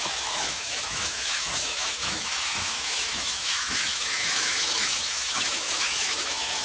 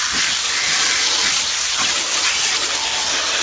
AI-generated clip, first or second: first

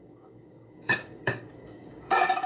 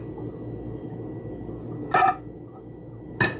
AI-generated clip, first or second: first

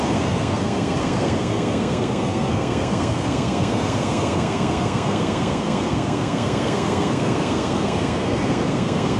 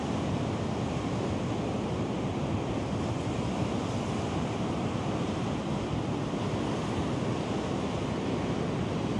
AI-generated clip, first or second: first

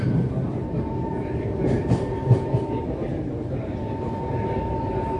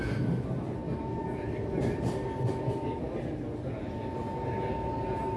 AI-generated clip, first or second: first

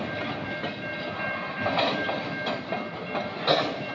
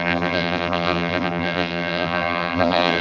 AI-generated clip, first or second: second